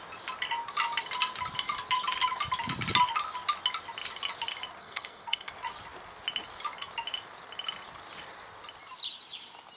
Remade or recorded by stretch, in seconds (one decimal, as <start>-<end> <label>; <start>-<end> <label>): 0.0-4.8 recorded; 4.8-5.5 remade; 5.5-9.8 recorded